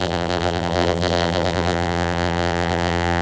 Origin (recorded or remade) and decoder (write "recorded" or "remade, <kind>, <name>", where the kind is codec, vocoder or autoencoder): remade, vocoder, BigVGAN v2